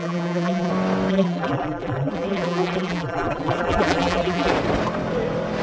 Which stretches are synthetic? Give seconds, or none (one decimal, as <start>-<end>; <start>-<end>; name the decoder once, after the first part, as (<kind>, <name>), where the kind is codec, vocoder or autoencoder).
0.0-0.7 (vocoder, BigVGAN v2); 1.1-4.5